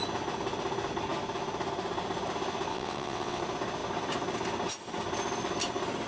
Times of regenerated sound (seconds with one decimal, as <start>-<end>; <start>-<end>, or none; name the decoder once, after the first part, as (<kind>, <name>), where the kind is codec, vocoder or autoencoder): 2.7-3.4 (vocoder, WaveNeXt)